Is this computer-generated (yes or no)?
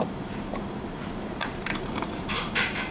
yes